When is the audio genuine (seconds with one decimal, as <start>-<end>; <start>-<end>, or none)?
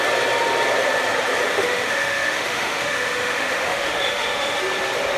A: 0.0-1.5; 4.6-5.2